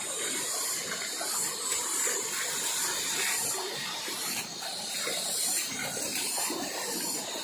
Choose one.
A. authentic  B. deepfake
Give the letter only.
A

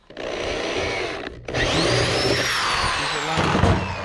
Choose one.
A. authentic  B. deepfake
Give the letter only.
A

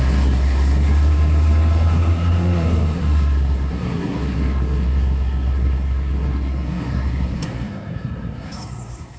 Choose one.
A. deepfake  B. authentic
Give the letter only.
A